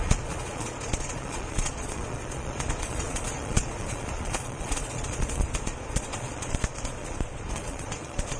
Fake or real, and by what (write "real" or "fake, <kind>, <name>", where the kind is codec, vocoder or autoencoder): fake, vocoder, Vocos